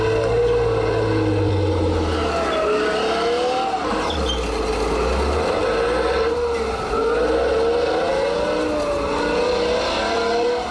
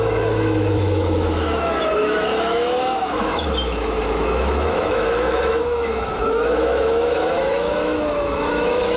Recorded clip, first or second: first